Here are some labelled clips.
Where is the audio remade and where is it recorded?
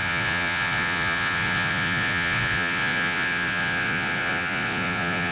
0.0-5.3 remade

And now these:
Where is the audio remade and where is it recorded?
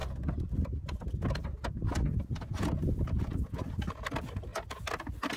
0.0-5.4 recorded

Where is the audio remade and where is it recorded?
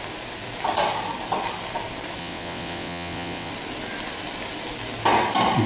0.0-2.2 recorded; 2.2-3.5 remade; 3.5-5.7 recorded